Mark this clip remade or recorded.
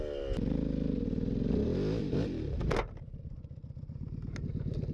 recorded